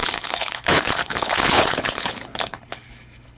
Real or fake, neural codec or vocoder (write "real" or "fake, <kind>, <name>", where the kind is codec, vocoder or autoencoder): fake, codec, HILCodec